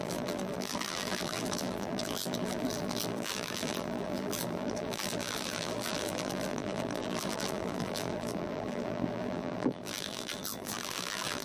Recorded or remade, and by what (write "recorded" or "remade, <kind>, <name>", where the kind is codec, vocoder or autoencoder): remade, vocoder, BigVGAN v2